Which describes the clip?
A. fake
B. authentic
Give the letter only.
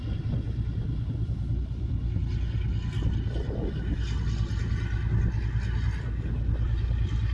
B